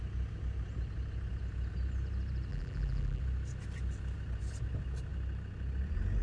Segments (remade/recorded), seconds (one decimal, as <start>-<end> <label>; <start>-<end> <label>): 0.0-2.5 recorded; 2.5-3.2 remade; 3.2-6.2 recorded